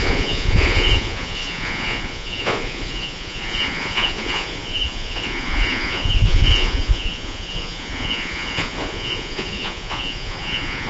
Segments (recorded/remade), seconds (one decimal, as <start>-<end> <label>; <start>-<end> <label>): 0.0-10.9 remade